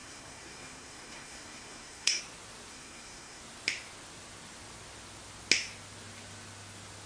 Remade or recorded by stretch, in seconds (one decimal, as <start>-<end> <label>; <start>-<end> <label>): 0.0-2.2 remade; 2.2-2.7 recorded; 2.7-3.4 remade; 3.4-7.1 recorded